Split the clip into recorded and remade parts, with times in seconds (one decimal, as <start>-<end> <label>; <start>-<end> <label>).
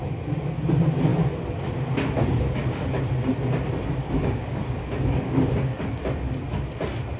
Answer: 0.0-4.0 recorded; 4.0-6.0 remade; 6.0-7.2 recorded